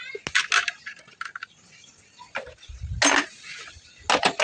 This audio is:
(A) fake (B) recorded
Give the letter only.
B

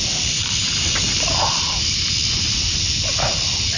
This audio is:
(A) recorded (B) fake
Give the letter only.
A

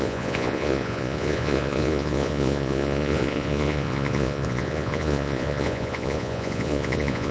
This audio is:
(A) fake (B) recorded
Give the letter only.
A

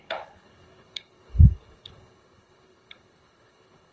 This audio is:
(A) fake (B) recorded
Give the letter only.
A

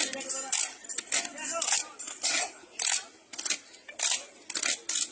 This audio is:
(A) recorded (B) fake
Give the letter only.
A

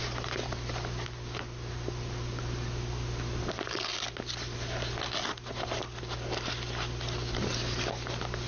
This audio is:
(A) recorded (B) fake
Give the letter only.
A